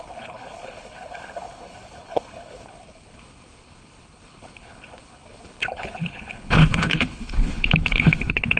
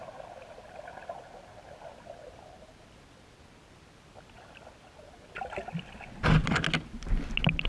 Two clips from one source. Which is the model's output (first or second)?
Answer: first